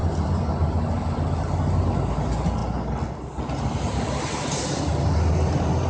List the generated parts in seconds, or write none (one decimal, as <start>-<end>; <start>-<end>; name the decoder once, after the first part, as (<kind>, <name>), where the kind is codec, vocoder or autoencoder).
none